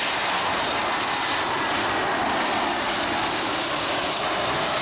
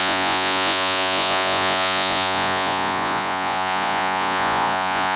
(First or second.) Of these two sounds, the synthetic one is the second